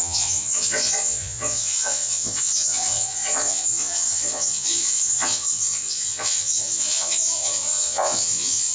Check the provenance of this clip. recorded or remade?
remade